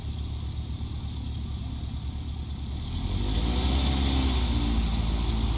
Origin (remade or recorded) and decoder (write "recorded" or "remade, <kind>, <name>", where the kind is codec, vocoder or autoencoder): recorded